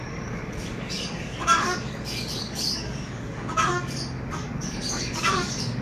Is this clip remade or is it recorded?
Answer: remade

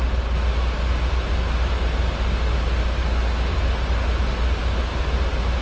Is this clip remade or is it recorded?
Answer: recorded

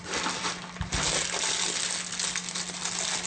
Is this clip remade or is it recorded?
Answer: recorded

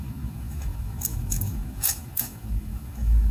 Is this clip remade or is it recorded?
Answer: remade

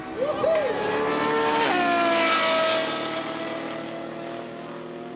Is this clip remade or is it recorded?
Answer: recorded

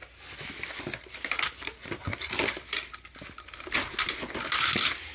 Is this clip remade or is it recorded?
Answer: recorded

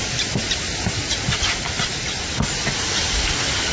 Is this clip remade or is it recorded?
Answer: recorded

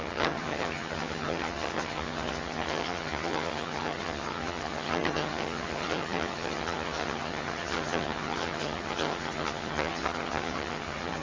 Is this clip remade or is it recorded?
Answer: remade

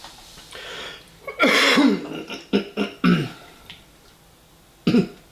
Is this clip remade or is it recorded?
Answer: recorded